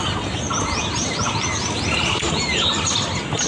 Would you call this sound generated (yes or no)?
no